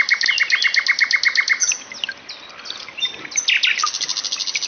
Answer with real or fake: real